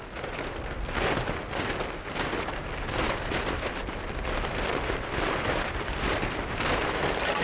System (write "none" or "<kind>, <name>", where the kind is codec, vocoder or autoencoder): none